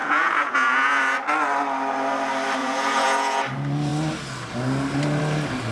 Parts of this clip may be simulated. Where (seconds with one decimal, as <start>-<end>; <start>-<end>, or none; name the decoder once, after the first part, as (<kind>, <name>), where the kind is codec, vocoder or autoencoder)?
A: 0.0-1.0 (vocoder, Vocos); 2.6-3.4